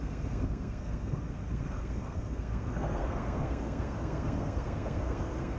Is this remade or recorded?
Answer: remade